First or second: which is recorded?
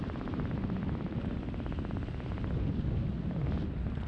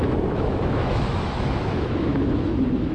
first